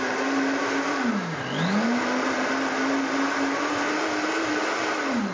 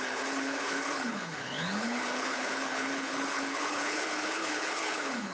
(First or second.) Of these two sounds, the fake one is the second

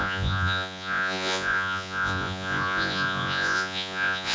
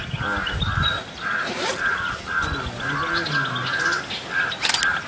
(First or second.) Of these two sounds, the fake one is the first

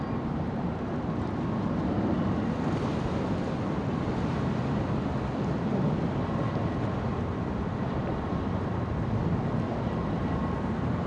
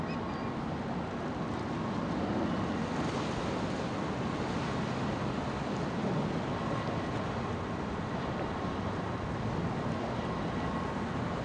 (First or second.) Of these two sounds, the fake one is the first